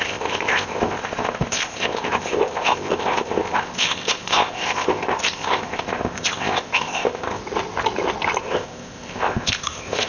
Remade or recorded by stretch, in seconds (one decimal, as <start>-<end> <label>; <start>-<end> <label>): 0.0-7.4 remade; 7.4-8.4 recorded; 8.4-10.1 remade